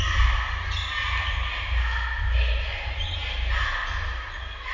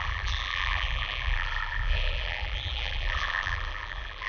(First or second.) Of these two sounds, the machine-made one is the second